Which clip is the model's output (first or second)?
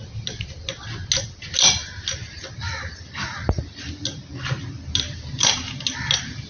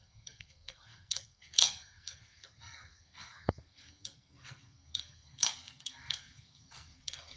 second